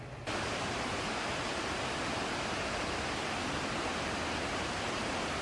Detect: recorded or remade recorded